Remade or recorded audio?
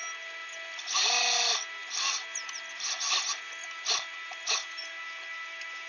recorded